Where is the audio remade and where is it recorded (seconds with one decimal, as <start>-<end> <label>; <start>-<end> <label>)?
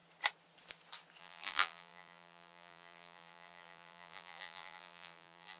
0.0-1.2 recorded; 1.2-5.6 remade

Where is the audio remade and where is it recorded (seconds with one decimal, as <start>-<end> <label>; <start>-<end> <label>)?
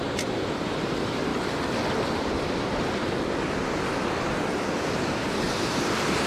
0.0-1.3 remade; 1.3-4.9 recorded; 4.9-6.3 remade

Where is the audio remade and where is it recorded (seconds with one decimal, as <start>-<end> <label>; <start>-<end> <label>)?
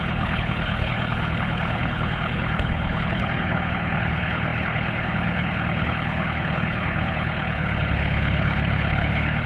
0.0-9.5 remade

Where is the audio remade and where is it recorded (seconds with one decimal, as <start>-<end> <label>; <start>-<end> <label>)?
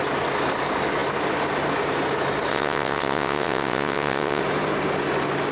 0.0-2.5 recorded; 2.5-4.4 remade; 4.4-5.5 recorded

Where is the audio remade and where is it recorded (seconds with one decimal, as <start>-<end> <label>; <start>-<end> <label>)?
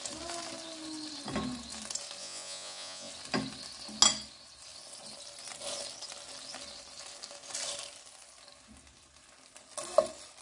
0.0-2.2 recorded; 2.2-3.1 remade; 3.1-10.4 recorded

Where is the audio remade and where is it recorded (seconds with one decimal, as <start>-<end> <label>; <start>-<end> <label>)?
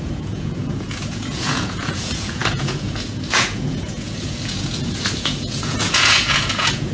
0.0-6.9 remade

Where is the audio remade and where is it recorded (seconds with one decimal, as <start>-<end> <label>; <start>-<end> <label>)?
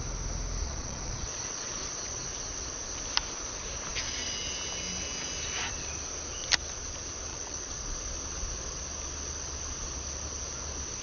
0.0-0.6 recorded; 0.6-2.3 remade; 2.3-7.3 recorded; 7.3-8.0 remade; 8.0-11.0 recorded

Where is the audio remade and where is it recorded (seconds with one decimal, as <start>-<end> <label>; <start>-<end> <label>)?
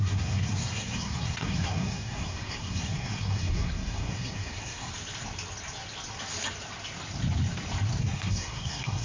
0.0-4.9 remade; 4.9-8.0 recorded; 8.0-9.0 remade